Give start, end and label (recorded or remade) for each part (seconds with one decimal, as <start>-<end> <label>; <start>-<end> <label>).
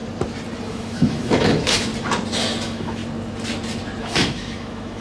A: 0.0-0.7 recorded; 0.7-1.9 remade; 1.9-2.6 recorded; 2.6-3.0 remade; 3.0-4.0 recorded; 4.0-5.0 remade